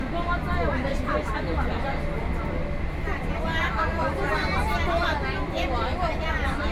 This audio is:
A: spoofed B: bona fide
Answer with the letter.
B